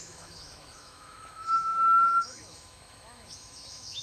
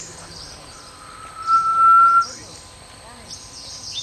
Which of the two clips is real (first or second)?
second